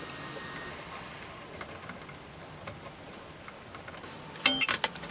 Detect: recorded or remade recorded